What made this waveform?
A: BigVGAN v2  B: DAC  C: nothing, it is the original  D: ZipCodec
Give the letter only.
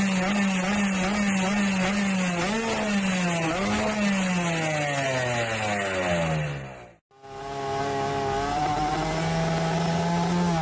C